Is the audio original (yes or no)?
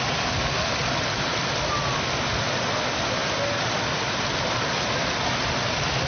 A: yes